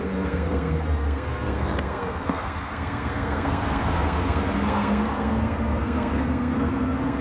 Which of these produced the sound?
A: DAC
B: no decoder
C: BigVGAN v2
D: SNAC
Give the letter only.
D